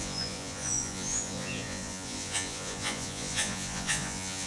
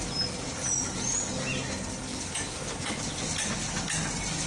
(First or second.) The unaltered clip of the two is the second